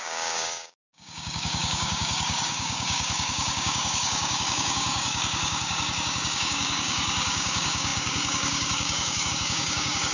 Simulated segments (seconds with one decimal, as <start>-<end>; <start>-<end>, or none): 0.0-10.1